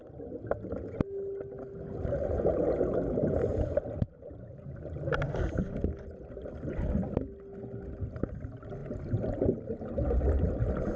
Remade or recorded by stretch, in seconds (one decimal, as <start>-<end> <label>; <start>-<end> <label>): 0.0-3.5 recorded; 3.5-6.8 remade; 6.8-8.8 recorded; 8.8-10.5 remade; 10.5-11.0 recorded